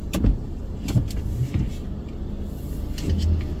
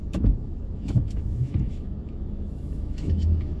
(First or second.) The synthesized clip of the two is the second